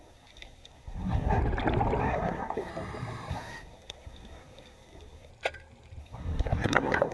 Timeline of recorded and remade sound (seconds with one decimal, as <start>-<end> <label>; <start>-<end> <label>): 0.0-1.4 remade; 1.4-2.0 recorded; 2.0-2.7 remade; 2.7-3.3 recorded; 3.3-5.3 remade; 5.3-6.0 recorded; 6.0-7.1 remade